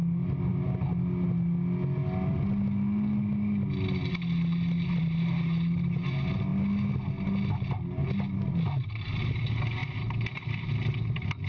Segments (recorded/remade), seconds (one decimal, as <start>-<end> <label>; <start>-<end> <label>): 0.0-11.5 recorded